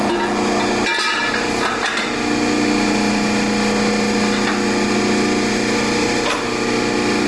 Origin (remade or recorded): recorded